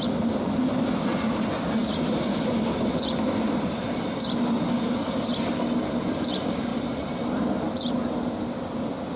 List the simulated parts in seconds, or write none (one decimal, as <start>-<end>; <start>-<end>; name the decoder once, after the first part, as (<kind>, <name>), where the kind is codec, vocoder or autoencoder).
none